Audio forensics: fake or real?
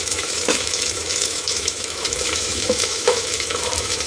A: fake